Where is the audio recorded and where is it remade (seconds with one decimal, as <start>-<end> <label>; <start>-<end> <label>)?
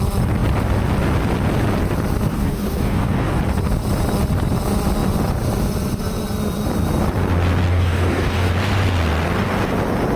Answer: 0.0-2.3 recorded; 2.3-3.4 remade; 3.4-7.7 recorded; 7.7-8.5 remade; 8.5-10.2 recorded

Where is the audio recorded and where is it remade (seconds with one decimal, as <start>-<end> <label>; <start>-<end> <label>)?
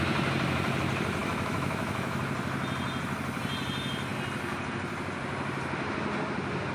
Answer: 0.0-1.2 recorded; 1.2-2.2 remade; 2.2-6.7 recorded